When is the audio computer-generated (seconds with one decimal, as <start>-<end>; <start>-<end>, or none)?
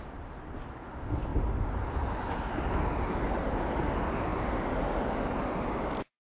none